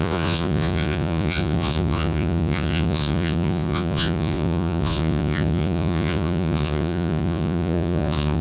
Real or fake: fake